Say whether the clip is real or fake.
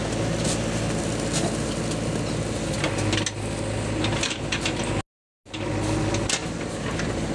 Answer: real